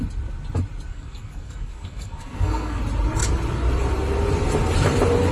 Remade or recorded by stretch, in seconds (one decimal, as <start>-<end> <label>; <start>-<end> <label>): 0.0-0.9 recorded; 0.9-2.8 remade; 2.8-5.3 recorded